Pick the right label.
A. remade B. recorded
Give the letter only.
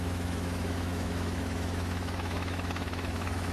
A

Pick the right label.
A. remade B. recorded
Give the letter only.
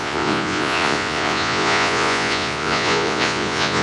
A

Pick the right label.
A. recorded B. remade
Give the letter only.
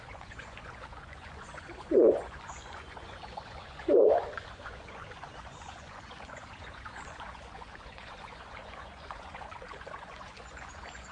B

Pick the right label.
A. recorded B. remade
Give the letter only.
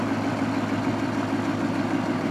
A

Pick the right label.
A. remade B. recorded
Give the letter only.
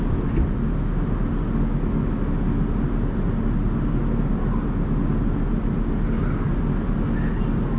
B